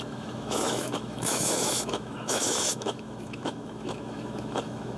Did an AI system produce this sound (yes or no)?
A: yes